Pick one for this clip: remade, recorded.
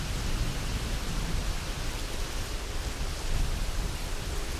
recorded